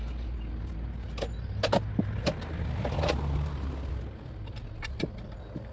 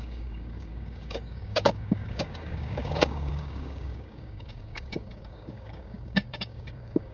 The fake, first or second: second